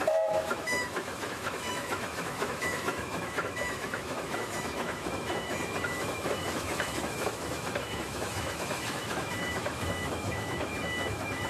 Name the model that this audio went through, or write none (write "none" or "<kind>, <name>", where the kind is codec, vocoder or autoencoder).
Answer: autoencoder, DAC-VAE